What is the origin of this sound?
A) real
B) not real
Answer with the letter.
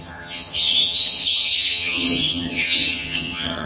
B